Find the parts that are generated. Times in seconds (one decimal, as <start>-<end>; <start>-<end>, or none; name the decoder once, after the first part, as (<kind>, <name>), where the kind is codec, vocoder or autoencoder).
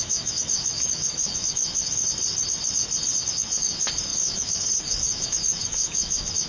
0.0-2.0 (autoencoder, DAC-VAE); 3.3-6.5